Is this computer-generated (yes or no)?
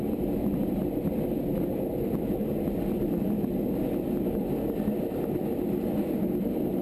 no